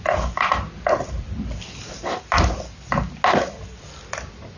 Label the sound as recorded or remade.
recorded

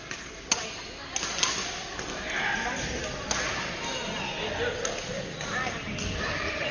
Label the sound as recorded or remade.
recorded